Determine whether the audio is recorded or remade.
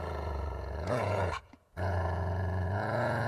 remade